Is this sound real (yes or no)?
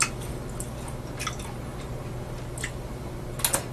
yes